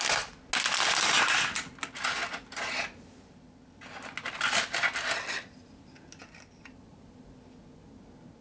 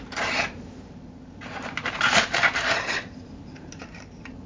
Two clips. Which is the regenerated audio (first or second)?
second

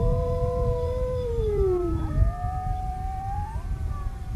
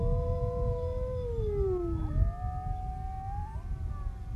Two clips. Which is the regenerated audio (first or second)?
first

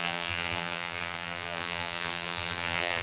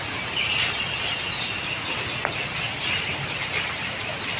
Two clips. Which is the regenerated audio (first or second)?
first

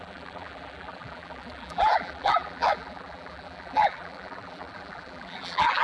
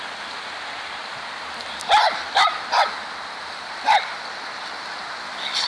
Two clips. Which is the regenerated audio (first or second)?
first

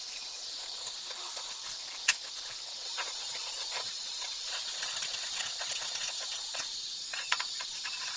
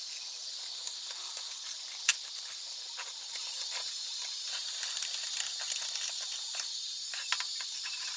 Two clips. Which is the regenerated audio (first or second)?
first